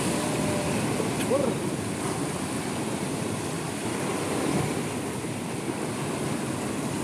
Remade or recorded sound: recorded